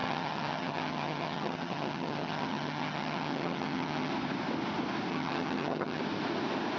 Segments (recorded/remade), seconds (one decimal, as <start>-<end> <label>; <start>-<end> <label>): 0.0-4.1 remade; 4.1-5.1 recorded; 5.1-6.0 remade; 6.0-6.8 recorded